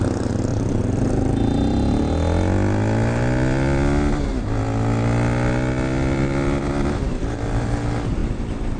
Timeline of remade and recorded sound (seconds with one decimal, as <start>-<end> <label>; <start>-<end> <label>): 0.0-0.5 recorded; 0.5-2.0 remade; 2.0-8.8 recorded

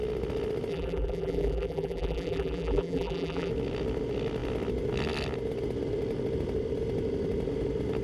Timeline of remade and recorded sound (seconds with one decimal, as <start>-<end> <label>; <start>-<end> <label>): 0.0-0.7 recorded; 0.7-3.5 remade; 3.5-8.0 recorded

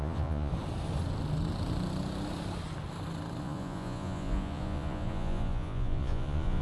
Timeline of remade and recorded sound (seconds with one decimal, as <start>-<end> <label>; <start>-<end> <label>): 0.0-0.5 remade; 0.5-3.4 recorded; 3.4-6.6 remade

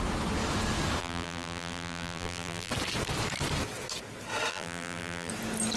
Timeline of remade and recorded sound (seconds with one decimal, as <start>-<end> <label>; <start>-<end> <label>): 0.0-1.0 recorded; 1.0-2.7 remade; 2.7-4.5 recorded; 4.5-5.3 remade; 5.3-5.8 recorded

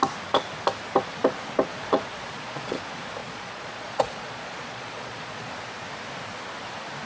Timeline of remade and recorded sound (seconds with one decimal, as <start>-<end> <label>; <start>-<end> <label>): 0.0-1.7 recorded; 1.7-2.8 remade; 2.8-3.2 recorded; 3.2-5.5 remade; 5.5-7.1 recorded